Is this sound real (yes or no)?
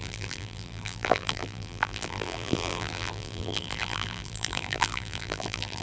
no